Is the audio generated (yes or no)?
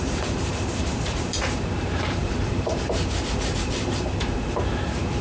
yes